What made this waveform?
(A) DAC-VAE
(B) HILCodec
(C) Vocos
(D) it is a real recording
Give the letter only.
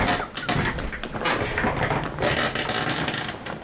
D